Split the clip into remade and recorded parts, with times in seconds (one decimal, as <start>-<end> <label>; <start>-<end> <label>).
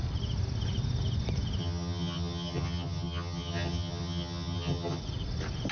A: 0.0-1.6 recorded; 1.6-5.0 remade; 5.0-5.7 recorded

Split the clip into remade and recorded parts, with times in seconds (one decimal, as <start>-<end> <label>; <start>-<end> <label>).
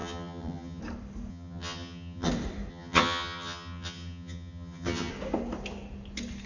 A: 0.0-0.8 remade; 0.8-1.3 recorded; 1.3-2.3 remade; 2.3-2.7 recorded; 2.7-5.1 remade; 5.1-6.5 recorded